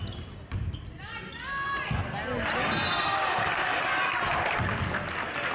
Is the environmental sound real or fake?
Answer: real